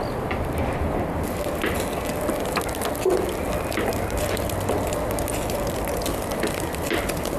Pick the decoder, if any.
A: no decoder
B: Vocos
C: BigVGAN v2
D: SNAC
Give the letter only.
A